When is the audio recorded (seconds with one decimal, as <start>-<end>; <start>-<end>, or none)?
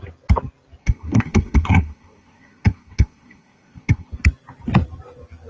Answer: 0.0-0.8; 4.1-5.5